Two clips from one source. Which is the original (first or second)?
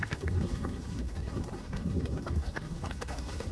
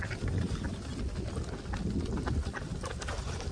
second